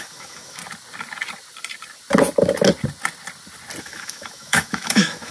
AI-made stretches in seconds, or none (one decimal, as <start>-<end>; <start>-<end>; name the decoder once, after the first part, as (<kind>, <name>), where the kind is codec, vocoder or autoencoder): 0.0-0.6 (autoencoder, DAC-VAE); 3.8-5.3